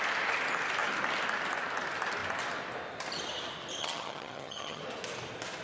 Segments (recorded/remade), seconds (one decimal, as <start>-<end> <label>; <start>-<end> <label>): 0.0-3.8 recorded; 3.8-4.8 remade; 4.8-5.6 recorded